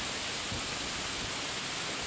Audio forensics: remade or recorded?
recorded